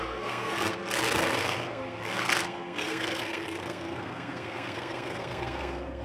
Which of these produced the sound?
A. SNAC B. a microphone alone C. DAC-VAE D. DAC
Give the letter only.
A